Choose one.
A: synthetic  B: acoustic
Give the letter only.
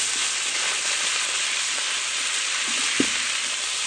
B